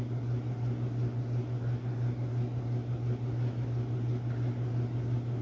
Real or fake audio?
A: real